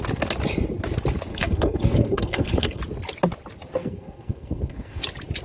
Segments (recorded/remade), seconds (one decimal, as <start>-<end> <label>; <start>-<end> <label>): 0.0-1.3 recorded; 1.3-2.8 remade; 2.8-3.8 recorded; 3.8-5.0 remade; 5.0-5.4 recorded